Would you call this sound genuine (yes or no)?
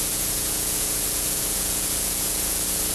no